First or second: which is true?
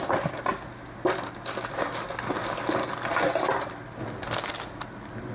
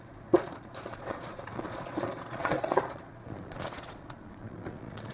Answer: first